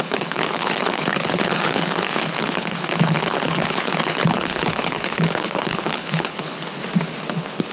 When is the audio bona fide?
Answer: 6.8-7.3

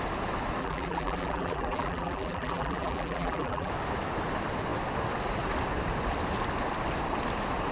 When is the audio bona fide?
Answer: 0.0-0.6; 3.7-7.7

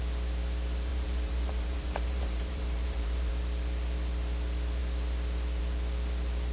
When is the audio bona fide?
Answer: 0.0-0.9; 3.3-6.5

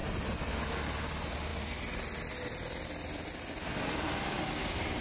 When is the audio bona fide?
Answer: 0.6-5.0

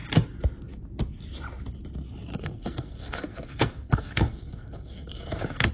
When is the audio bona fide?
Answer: 0.0-2.3

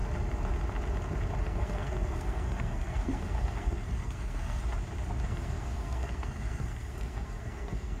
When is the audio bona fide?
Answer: 0.0-1.4; 4.6-5.2